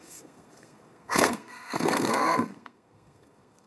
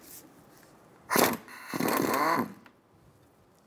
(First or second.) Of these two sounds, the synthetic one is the first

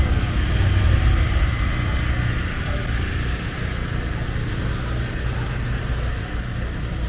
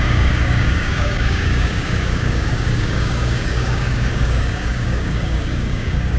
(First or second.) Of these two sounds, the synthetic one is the second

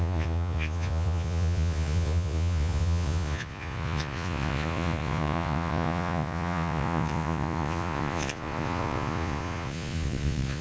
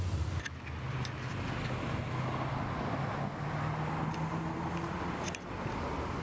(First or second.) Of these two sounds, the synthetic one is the first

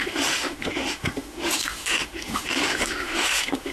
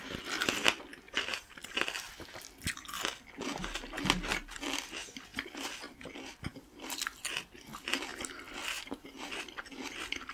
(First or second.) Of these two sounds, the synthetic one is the first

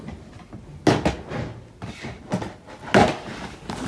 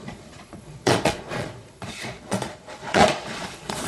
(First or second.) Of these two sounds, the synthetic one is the second